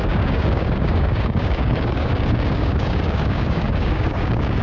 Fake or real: fake